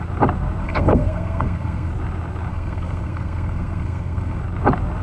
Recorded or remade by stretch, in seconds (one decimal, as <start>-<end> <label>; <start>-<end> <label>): 0.0-0.6 recorded; 0.6-1.9 remade; 1.9-2.5 recorded; 2.5-4.4 remade; 4.4-5.0 recorded